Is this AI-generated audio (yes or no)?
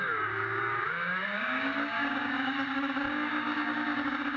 yes